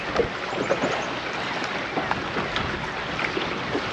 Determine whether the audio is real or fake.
real